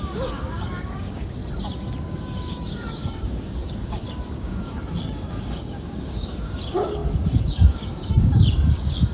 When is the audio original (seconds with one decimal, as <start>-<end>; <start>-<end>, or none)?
1.4-2.0